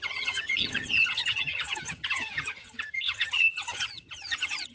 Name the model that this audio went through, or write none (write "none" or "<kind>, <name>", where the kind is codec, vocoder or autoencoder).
vocoder, HiFi-GAN